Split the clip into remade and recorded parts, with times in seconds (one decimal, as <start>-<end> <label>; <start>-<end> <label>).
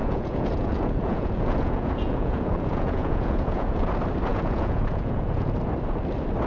0.0-3.9 remade; 3.9-4.3 recorded; 4.3-5.5 remade; 5.5-6.5 recorded